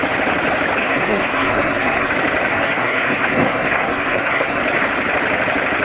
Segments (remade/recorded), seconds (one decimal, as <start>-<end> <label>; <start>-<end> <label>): 0.0-0.8 recorded; 0.8-2.1 remade; 2.1-2.5 recorded; 2.5-4.6 remade; 4.6-5.8 recorded